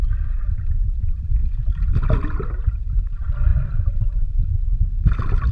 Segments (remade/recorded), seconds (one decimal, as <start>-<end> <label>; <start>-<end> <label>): 0.0-5.5 recorded